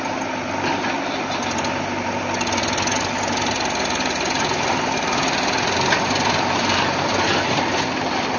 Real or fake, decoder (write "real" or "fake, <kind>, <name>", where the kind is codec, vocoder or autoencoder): real